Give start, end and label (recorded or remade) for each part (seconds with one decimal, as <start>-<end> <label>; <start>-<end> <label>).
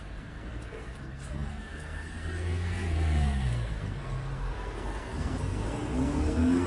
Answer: 0.0-6.7 remade